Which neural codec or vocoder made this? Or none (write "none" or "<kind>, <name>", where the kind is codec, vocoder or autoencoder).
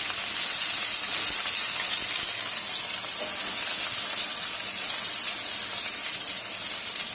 none